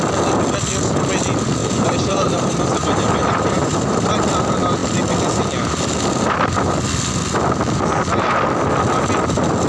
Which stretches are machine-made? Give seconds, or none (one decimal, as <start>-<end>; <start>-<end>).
1.6-4.1